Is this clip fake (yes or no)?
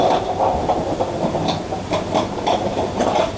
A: yes